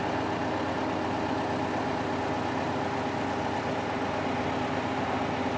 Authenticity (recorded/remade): recorded